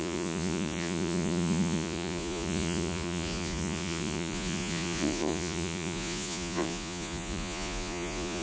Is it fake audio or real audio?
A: fake